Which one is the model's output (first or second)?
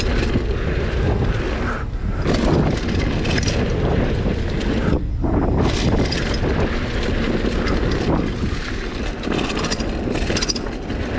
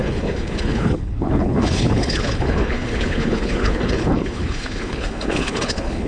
second